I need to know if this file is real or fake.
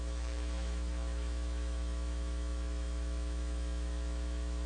fake